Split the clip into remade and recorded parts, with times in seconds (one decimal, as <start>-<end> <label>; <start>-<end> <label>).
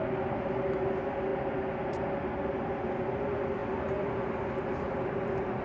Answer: 0.0-5.6 recorded